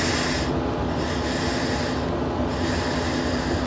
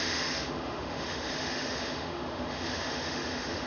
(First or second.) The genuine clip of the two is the first